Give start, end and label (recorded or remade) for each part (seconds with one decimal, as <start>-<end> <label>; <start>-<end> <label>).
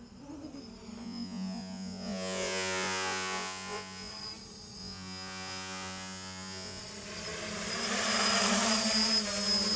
0.0-1.0 recorded; 1.0-4.1 remade; 4.1-4.8 recorded; 4.8-6.8 remade; 6.8-9.8 recorded